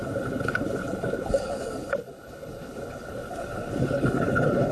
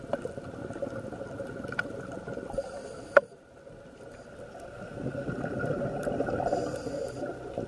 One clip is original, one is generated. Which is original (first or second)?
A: second